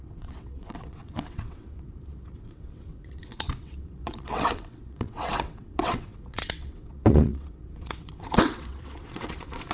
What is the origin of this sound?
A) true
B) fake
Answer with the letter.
B